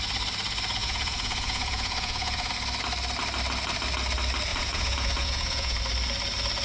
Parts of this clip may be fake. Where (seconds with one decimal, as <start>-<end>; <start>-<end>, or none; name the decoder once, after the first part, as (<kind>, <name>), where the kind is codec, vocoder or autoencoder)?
0.8-2.5 (vocoder, Vocos); 4.5-5.8